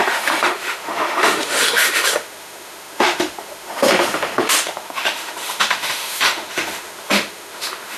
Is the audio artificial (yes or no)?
yes